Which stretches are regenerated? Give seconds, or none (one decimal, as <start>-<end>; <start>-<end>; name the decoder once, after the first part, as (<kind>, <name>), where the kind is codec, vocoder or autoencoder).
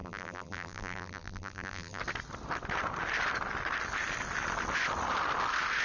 0.0-2.0 (vocoder, BigVGAN v2)